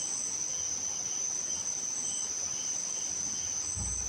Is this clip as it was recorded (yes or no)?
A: yes